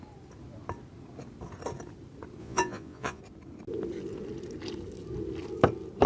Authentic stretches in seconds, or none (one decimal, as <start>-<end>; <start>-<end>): 0.0-2.4; 3.2-6.1